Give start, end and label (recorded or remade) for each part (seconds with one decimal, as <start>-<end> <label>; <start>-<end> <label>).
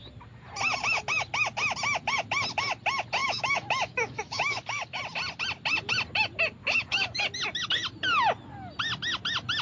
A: 0.0-3.2 recorded; 3.2-5.0 remade; 5.0-6.6 recorded; 6.6-7.2 remade; 7.2-9.6 recorded